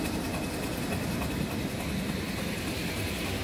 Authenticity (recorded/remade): recorded